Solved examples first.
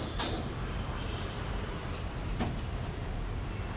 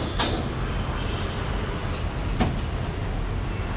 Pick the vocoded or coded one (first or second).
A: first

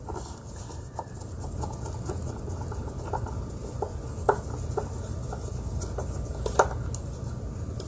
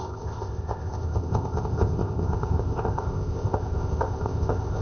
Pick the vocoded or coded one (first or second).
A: second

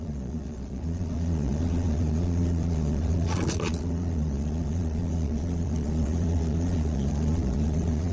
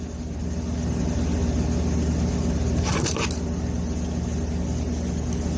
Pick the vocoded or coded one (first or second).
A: first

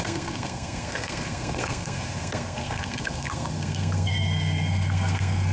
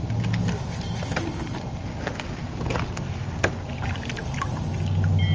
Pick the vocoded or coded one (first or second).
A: first